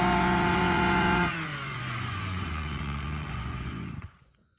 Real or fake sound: fake